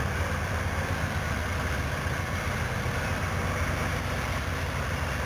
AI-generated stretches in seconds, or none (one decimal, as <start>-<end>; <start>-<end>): 0.0-1.5; 4.6-5.2